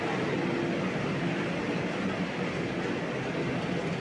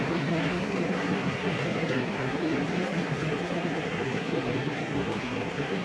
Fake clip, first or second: second